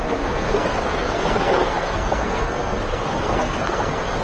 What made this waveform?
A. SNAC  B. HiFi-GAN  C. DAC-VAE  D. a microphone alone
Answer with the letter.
A